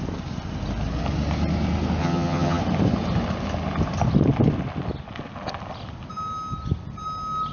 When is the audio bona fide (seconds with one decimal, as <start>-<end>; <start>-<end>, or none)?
0.0-2.0; 2.6-7.5